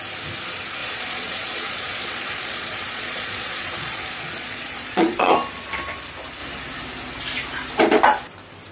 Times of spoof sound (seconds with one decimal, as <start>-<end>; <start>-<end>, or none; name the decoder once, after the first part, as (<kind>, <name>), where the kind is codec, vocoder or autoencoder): 0.8-5.3 (vocoder, Vocos)